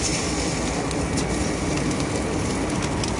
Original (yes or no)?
yes